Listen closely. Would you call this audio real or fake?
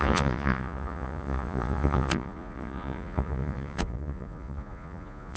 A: fake